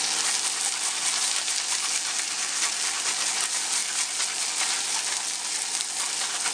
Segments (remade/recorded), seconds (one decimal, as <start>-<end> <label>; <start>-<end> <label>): 0.0-6.5 recorded